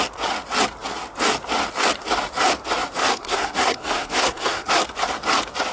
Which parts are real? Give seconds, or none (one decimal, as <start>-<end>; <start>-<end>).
0.0-3.0; 4.7-5.7

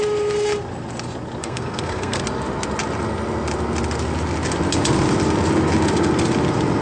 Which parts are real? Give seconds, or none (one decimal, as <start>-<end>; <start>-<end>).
0.0-1.4; 2.2-6.8

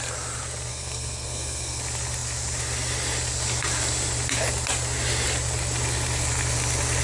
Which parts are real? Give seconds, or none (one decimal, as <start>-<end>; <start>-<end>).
0.0-0.7; 1.8-7.0